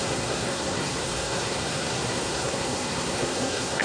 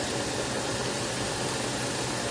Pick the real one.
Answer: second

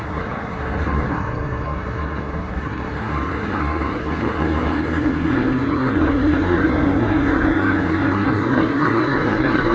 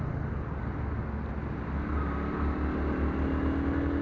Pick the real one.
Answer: second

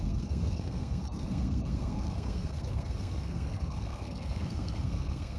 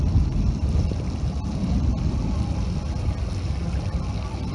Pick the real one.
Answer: second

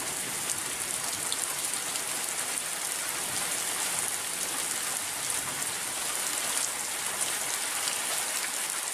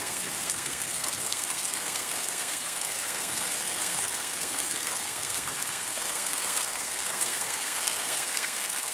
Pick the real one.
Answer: first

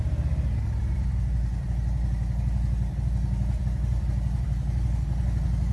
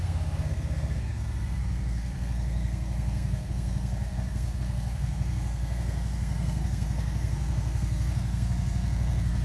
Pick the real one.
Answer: first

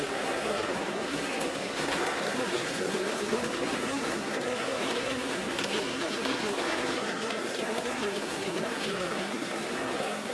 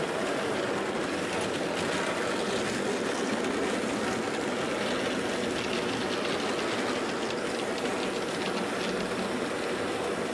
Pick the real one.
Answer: second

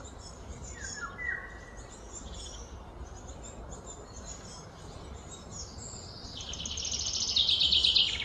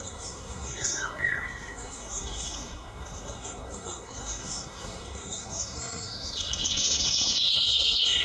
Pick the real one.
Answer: first